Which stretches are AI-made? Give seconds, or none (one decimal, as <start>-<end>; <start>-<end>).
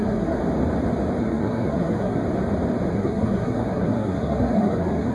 0.0-0.4; 1.2-2.2; 2.9-5.1